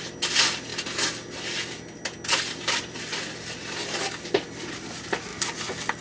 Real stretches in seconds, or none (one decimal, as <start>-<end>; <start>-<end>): 0.0-6.0